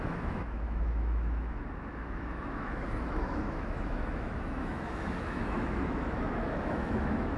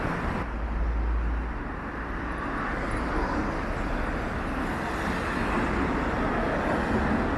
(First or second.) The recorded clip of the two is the second